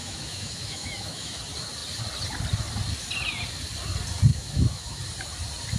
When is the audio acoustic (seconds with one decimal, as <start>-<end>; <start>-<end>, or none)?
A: 1.4-4.3; 5.0-5.8